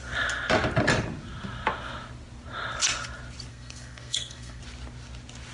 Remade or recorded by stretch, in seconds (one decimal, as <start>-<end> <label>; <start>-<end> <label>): 0.0-3.5 recorded; 3.5-4.6 remade; 4.6-5.5 recorded